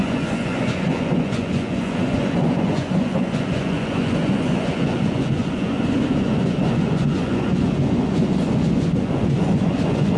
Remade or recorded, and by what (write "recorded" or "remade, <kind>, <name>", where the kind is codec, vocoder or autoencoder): remade, vocoder, Vocos